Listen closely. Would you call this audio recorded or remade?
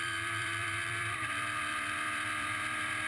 remade